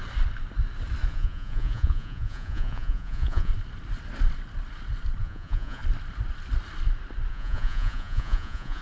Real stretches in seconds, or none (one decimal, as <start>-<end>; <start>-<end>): 0.0-1.1; 3.5-5.2; 5.8-7.3